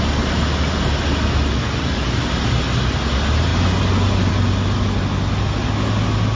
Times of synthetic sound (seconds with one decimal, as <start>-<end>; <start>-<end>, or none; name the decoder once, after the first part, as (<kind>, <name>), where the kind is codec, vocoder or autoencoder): none